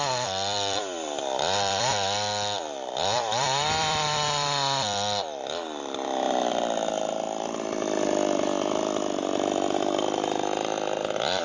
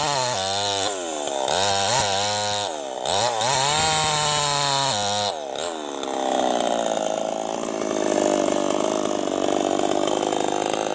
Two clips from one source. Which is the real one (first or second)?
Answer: second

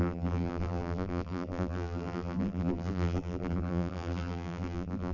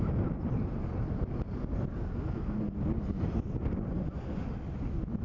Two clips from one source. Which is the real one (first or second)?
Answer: second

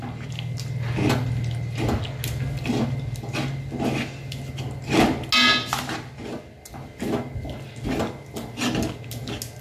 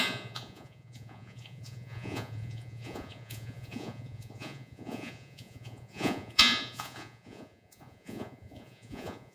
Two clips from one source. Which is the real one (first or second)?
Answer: first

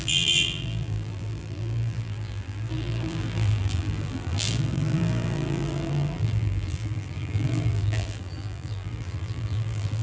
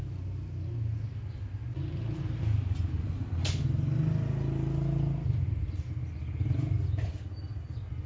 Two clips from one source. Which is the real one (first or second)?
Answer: second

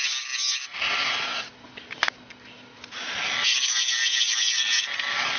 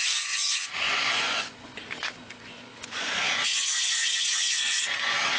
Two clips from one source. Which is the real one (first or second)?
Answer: first